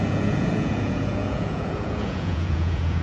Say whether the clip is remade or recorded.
remade